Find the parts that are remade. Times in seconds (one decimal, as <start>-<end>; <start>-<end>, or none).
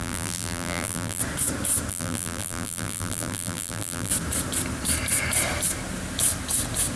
0.0-1.2; 1.9-4.1